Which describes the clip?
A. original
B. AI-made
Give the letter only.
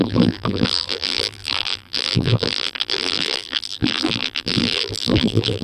B